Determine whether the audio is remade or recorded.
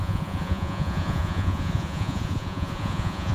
remade